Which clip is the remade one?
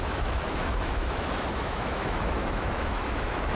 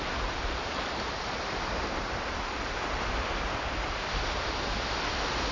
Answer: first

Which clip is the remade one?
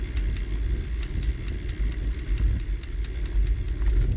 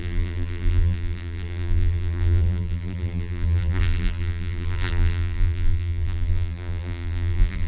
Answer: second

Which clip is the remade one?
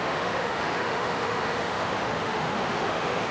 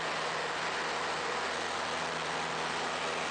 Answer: first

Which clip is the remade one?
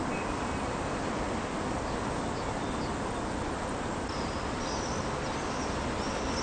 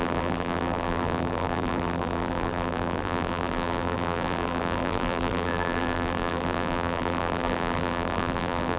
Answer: second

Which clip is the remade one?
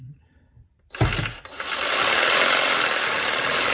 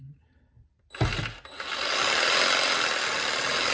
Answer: first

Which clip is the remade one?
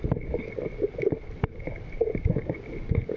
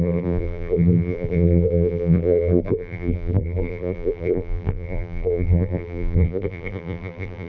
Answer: second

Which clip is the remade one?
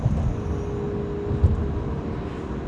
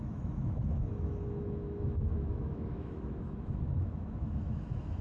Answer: second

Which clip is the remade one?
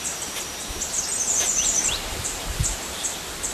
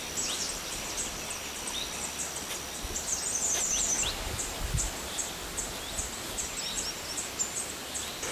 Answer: first